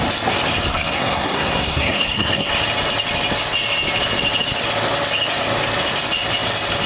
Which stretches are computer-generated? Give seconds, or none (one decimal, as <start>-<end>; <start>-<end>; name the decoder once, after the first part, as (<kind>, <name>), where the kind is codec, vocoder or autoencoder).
0.7-2.5 (codec, SNAC)

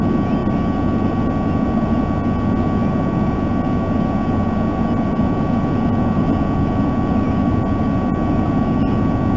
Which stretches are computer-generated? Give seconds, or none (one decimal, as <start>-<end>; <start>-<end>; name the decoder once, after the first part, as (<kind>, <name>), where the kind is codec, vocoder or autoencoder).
none